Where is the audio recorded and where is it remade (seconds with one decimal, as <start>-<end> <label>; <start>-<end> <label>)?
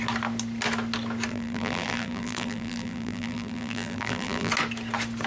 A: 0.0-1.3 recorded; 1.3-4.5 remade; 4.5-5.3 recorded